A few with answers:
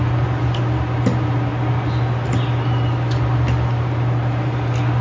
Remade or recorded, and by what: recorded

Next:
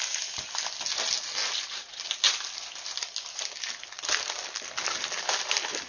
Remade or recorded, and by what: recorded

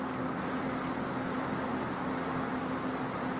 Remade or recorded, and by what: recorded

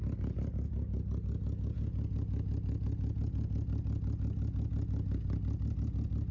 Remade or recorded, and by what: recorded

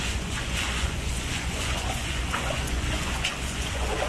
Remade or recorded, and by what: remade, vocoder, Vocos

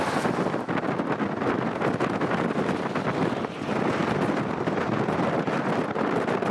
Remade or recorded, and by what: recorded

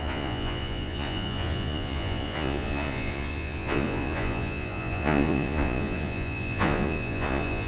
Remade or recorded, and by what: remade, vocoder, Vocos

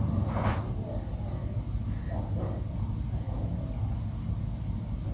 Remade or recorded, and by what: recorded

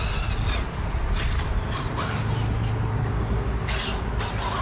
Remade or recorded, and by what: recorded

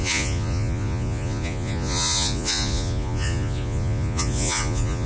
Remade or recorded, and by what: remade, vocoder, Vocos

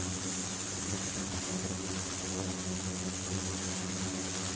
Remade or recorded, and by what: recorded